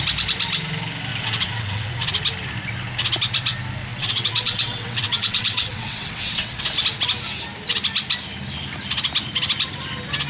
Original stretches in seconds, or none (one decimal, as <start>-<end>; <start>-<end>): 0.0-1.1; 1.9-3.9; 6.6-10.3